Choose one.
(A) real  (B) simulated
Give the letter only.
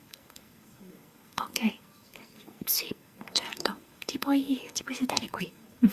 B